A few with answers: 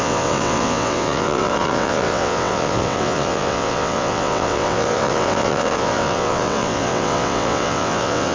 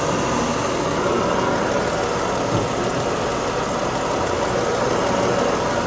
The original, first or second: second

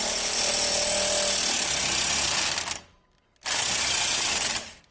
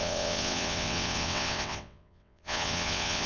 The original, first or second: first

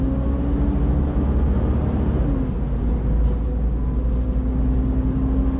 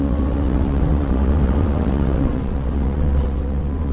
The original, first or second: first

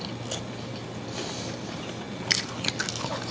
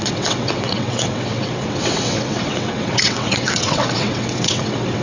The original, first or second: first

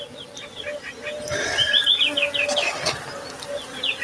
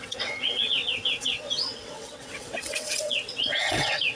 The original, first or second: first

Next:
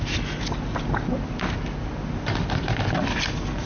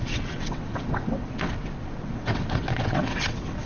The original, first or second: first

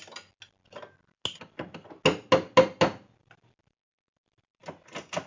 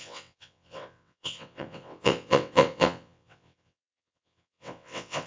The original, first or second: first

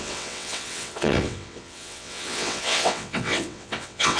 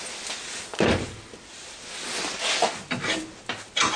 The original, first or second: second